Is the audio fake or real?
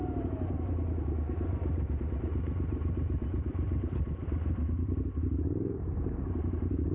fake